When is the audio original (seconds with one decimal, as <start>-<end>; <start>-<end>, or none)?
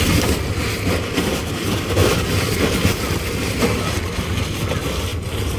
0.0-5.6